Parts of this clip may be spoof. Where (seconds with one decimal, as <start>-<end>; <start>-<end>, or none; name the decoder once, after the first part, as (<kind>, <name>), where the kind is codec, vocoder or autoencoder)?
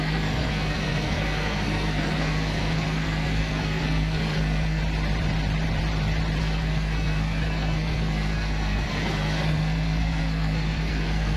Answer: 0.0-4.8 (codec, SNAC); 6.4-11.4